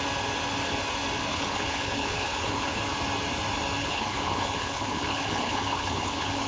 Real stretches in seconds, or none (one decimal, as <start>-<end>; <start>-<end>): 0.0-1.3; 2.8-3.8